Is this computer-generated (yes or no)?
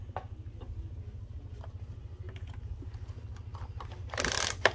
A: no